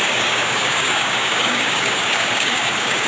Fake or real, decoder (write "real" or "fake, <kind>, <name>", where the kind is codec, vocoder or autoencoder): fake, codec, DAC